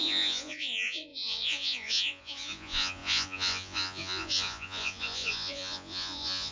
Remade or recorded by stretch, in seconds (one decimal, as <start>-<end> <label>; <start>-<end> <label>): 0.0-6.5 remade